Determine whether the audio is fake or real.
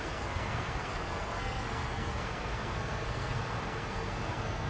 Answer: fake